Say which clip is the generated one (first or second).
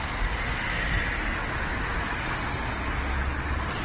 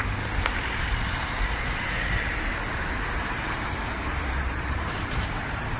second